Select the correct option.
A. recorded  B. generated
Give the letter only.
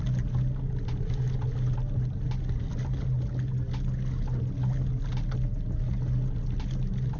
A